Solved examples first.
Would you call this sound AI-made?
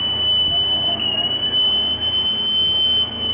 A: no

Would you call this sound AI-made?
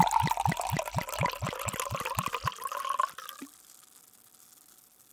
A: no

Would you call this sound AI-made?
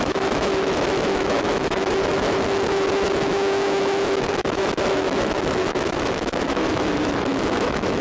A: yes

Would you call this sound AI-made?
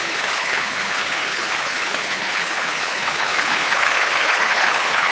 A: yes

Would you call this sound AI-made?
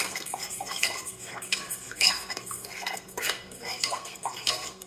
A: yes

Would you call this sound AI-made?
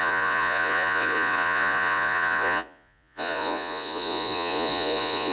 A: yes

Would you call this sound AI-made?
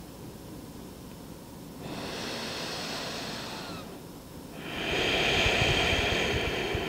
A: no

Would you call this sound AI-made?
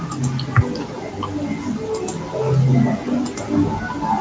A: no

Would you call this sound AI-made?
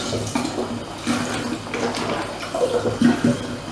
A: no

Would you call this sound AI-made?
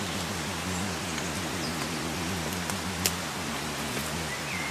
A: no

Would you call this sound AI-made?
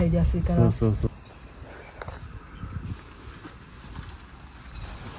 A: no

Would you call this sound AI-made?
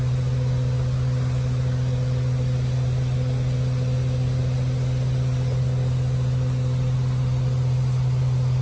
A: no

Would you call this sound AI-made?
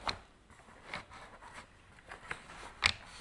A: no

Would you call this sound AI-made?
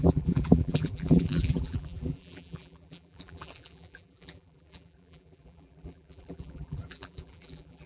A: yes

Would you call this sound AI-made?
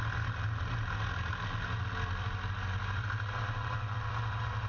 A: no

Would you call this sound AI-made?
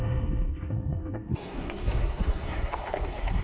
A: yes